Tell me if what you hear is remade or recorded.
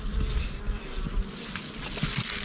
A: recorded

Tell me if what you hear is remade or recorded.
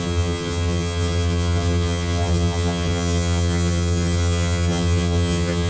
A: remade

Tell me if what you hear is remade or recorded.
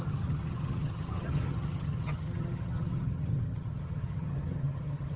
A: remade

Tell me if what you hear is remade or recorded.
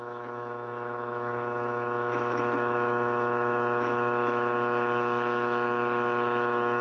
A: remade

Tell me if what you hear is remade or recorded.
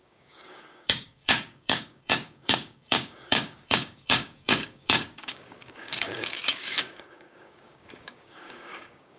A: remade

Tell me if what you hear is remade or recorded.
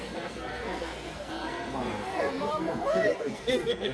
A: remade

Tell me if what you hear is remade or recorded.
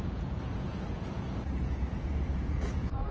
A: remade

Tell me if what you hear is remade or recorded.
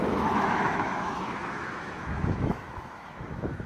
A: remade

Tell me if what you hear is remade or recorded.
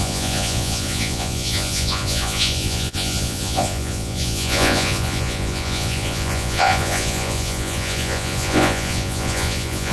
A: remade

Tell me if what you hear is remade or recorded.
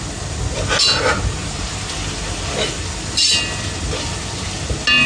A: recorded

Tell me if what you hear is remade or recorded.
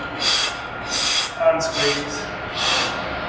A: recorded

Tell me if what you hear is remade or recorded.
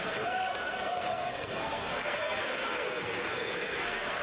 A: remade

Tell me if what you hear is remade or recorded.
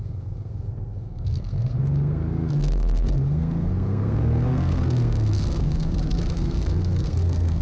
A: remade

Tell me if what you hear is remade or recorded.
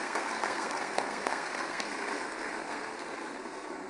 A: remade